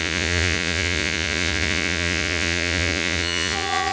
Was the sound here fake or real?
fake